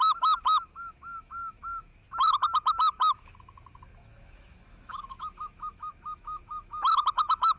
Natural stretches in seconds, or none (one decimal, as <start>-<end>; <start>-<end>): none